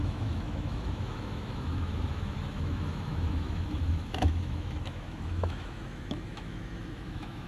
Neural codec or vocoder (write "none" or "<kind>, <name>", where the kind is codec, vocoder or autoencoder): autoencoder, DAC-VAE